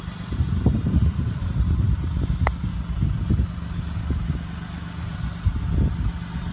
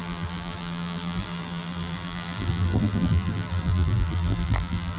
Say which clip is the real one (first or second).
first